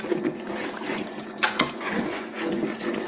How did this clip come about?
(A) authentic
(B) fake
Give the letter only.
B